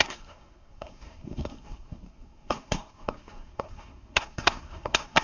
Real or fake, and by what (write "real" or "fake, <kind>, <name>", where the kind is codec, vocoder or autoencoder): fake, codec, SNAC